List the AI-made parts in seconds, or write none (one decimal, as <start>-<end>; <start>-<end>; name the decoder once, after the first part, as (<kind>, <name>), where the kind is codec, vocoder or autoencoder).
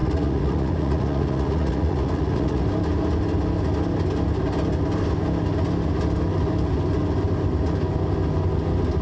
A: 0.0-2.6 (vocoder, Vocos)